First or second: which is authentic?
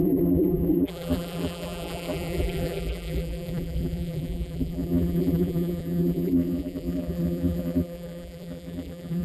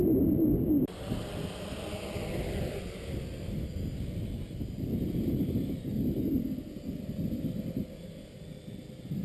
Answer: second